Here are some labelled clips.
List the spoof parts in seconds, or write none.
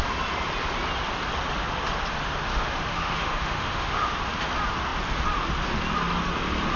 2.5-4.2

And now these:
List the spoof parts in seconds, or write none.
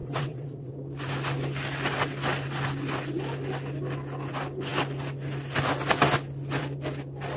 0.0-0.7